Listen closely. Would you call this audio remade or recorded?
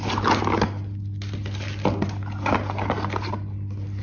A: recorded